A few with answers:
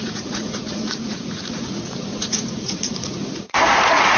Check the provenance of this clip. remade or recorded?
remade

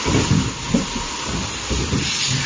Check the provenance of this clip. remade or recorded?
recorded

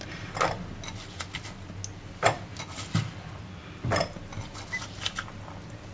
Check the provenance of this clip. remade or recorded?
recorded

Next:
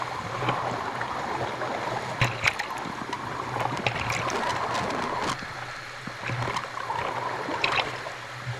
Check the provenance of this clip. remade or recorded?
recorded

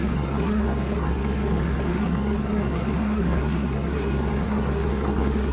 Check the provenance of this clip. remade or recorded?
remade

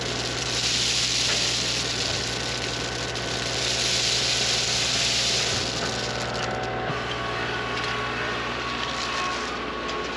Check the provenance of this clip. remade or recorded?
recorded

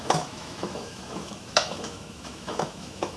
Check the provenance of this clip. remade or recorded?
remade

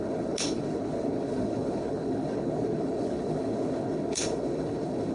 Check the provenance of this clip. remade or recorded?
remade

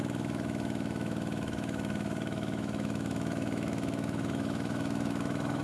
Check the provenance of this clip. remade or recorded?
remade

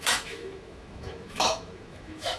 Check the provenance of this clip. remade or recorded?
remade